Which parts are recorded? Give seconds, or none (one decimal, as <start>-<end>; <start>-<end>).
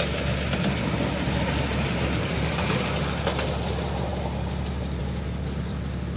0.0-6.2